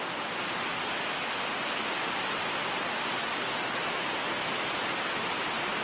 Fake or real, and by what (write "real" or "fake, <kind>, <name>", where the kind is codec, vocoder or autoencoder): real